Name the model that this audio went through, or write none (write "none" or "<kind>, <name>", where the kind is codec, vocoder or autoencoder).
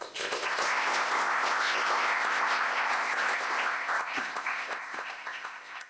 codec, ZipCodec